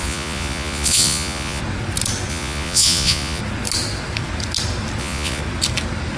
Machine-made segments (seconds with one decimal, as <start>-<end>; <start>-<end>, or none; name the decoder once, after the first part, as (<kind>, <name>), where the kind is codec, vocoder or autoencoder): 0.0-1.6 (vocoder, Vocos); 2.3-3.4; 5.0-5.4

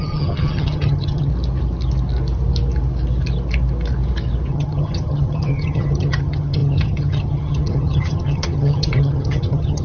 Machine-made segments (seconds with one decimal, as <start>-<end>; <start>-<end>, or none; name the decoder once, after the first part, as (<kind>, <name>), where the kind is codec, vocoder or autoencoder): 0.0-1.3 (vocoder, HiFi-GAN); 4.5-9.8

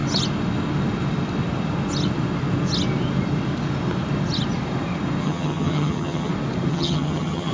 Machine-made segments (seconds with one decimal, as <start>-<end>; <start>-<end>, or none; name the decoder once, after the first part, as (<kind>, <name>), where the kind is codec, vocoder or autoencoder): 5.2-6.3 (vocoder, HiFi-GAN); 6.7-7.5

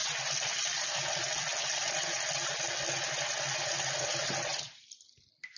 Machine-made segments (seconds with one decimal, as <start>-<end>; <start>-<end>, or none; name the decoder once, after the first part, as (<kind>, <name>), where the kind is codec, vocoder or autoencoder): none